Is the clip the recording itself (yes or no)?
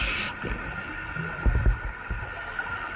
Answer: yes